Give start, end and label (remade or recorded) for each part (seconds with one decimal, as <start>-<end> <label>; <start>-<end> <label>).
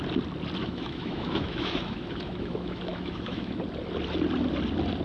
0.0-0.6 recorded; 0.6-3.6 remade; 3.6-5.0 recorded